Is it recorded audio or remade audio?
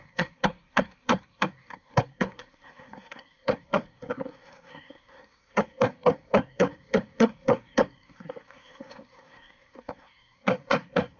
remade